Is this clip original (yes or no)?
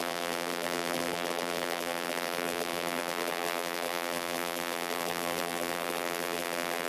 no